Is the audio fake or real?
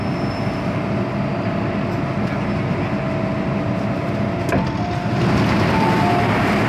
real